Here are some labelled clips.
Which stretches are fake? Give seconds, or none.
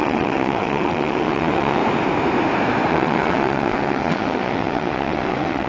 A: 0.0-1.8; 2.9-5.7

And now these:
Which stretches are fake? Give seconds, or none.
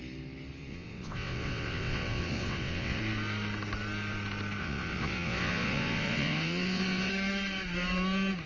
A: 0.7-3.0; 4.6-7.1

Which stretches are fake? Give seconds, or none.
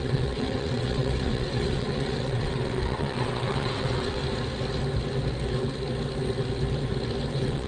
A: 0.0-4.2; 7.3-7.7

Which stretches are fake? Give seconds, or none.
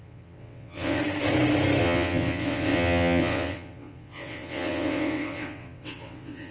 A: 0.0-1.0; 1.8-6.5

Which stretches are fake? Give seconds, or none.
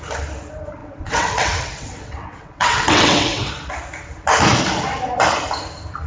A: 0.8-3.5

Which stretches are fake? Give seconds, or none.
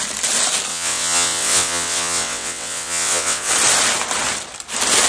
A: 0.7-3.5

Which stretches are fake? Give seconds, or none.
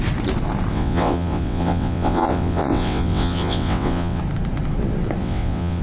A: 0.7-4.2; 5.2-5.8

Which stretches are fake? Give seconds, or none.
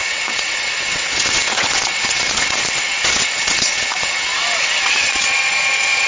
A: 0.0-6.1